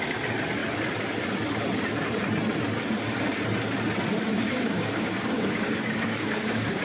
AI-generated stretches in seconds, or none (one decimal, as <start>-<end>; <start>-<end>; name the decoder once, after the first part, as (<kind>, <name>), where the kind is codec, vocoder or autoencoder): 4.3-6.8 (codec, DAC)